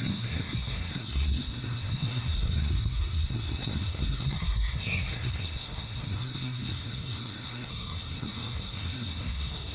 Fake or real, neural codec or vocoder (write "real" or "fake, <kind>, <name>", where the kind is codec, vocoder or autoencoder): fake, codec, SNAC